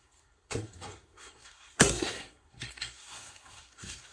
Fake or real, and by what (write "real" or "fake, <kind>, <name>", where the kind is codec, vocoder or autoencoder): fake, codec, SNAC